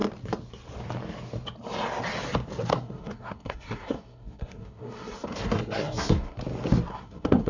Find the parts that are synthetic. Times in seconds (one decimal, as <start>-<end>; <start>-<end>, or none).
2.7-6.4; 6.9-7.5